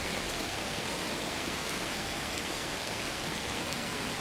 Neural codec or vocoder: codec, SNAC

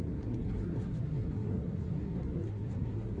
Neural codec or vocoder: codec, SNAC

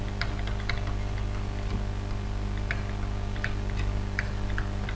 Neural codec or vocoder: none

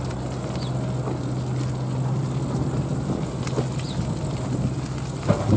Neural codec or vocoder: none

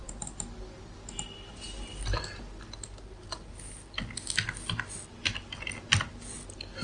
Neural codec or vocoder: none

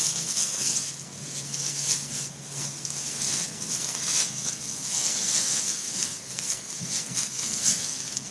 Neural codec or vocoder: codec, SNAC